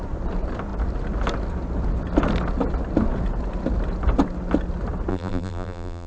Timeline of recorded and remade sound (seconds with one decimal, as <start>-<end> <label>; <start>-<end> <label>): 0.0-5.1 recorded; 5.1-6.1 remade